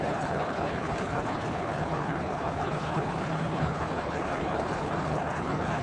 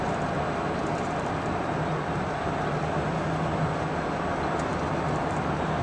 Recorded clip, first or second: second